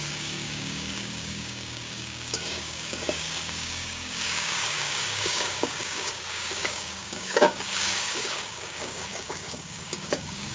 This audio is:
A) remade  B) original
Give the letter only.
A